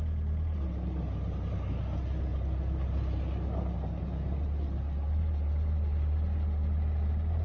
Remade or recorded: recorded